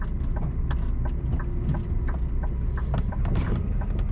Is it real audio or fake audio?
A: real